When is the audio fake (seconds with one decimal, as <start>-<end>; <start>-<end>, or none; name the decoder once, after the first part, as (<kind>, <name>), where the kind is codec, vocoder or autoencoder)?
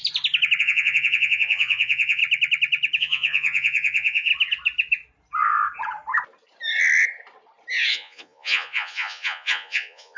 0.6-2.2 (vocoder, Vocos); 3.0-4.3; 7.9-10.2